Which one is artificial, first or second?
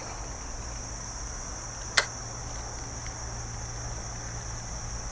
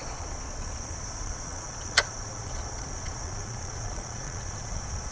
second